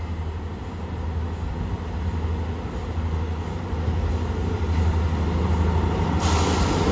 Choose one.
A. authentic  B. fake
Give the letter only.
A